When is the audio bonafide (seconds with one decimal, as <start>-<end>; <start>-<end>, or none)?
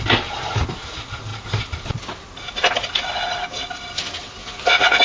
0.0-4.4